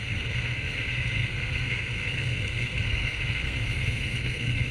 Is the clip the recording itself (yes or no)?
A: no